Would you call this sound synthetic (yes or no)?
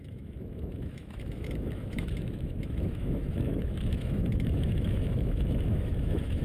yes